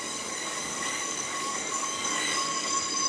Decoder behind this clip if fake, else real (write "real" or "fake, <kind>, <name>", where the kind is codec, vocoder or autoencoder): fake, codec, DAC